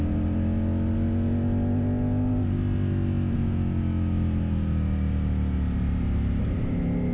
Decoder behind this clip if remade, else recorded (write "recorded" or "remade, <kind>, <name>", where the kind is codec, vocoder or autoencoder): recorded